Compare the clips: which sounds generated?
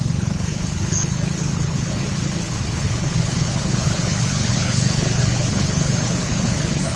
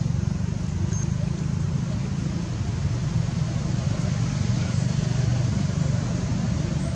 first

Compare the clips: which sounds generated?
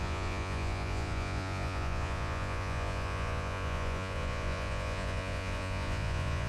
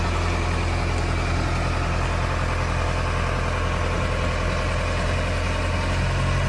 first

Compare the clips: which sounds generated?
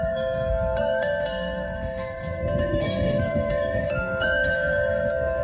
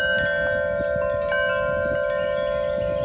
first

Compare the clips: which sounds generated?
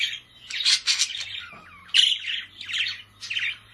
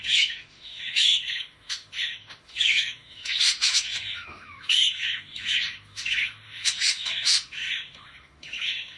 second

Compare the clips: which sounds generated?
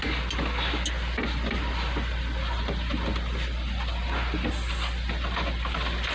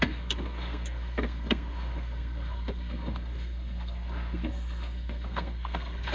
second